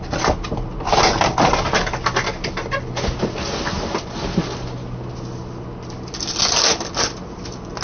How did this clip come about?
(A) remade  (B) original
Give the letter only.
B